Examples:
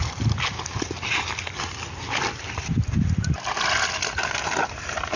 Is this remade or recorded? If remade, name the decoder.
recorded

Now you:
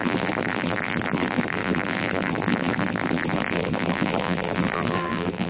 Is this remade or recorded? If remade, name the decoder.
remade, vocoder, BigVGAN v2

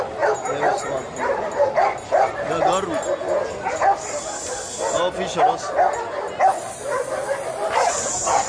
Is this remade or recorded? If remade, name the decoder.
recorded